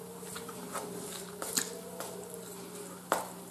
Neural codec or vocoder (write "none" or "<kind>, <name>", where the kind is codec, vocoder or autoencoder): none